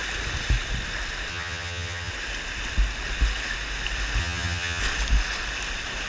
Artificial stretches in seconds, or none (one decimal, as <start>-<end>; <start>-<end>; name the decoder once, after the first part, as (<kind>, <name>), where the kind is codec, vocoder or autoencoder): 1.3-2.1 (vocoder, HiFi-GAN); 4.2-4.8